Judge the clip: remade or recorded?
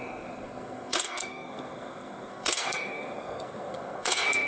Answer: remade